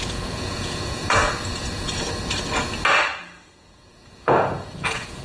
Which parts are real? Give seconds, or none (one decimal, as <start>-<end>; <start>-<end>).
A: 1.2-3.2